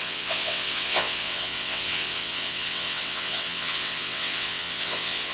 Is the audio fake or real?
fake